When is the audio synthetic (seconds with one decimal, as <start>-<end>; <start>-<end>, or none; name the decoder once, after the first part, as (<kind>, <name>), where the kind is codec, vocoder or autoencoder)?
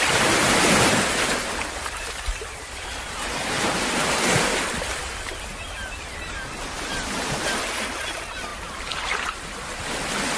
none